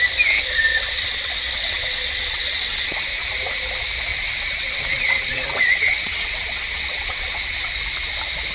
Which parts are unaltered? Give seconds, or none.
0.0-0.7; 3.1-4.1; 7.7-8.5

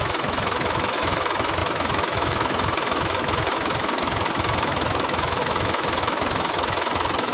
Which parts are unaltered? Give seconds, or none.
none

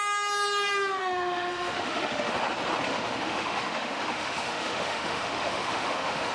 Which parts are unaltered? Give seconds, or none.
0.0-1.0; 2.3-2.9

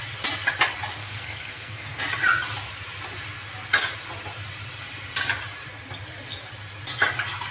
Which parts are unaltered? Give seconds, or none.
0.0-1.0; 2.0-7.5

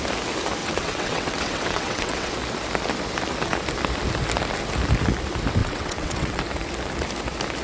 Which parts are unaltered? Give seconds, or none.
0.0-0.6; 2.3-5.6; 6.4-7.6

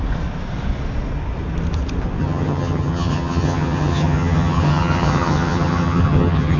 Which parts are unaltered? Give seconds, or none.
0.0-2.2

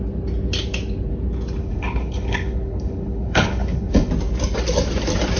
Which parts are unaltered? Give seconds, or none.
0.0-1.6; 4.1-5.4

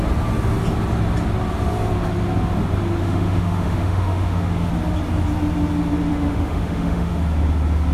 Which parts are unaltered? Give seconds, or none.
0.0-3.0; 4.7-6.1; 7.2-7.9